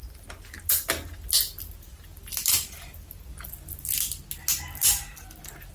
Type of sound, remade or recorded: recorded